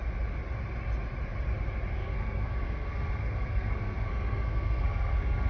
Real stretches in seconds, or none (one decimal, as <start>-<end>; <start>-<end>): 0.0-2.0